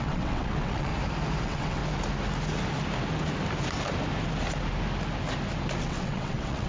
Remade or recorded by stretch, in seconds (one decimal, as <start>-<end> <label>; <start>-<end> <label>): 0.0-0.9 remade; 0.9-1.4 recorded; 1.4-1.8 remade; 1.8-5.8 recorded; 5.8-6.7 remade

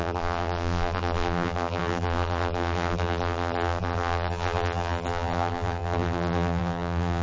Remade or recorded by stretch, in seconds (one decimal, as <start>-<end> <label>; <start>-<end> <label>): 0.0-7.2 remade